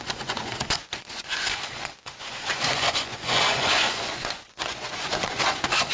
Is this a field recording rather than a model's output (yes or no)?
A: no